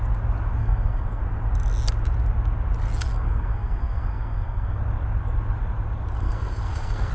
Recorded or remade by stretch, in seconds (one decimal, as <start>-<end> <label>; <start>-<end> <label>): 0.0-0.6 recorded; 0.6-1.2 remade; 1.2-3.1 recorded; 3.1-4.8 remade; 4.8-6.2 recorded; 6.2-7.1 remade

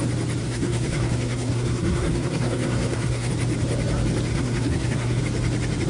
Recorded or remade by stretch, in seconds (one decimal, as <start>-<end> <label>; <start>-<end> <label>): 0.0-0.4 recorded; 0.4-3.3 remade; 3.3-4.3 recorded; 4.3-5.2 remade; 5.2-5.9 recorded

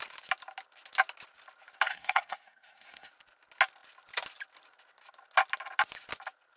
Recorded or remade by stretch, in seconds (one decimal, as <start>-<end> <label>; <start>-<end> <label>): 0.0-1.9 recorded; 1.9-3.1 remade; 3.1-6.6 recorded

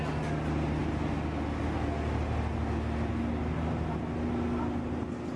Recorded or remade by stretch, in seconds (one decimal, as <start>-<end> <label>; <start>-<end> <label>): 0.0-5.4 recorded

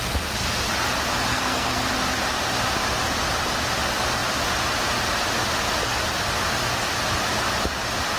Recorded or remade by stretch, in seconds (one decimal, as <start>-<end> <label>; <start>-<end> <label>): 0.0-1.3 recorded; 1.3-1.9 remade; 1.9-8.2 recorded

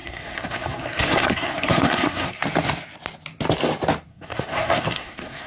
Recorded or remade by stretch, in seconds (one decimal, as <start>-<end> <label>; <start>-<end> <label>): 0.0-2.4 remade; 2.4-4.1 recorded; 4.1-5.5 remade